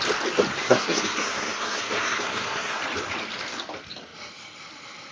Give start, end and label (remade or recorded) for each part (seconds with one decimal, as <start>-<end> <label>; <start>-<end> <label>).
0.0-0.6 recorded; 0.6-2.8 remade; 2.8-5.1 recorded